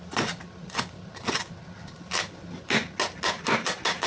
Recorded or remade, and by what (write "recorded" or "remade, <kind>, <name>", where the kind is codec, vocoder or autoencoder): recorded